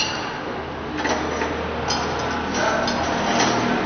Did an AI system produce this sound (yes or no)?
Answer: no